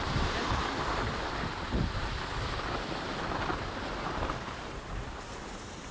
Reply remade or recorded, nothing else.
recorded